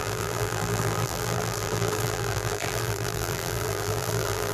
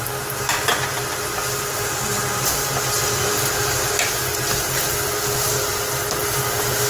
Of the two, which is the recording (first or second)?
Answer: second